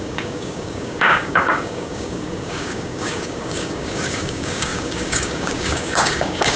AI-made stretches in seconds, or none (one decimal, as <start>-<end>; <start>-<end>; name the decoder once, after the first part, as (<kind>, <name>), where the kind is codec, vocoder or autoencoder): 0.0-6.6 (codec, DAC)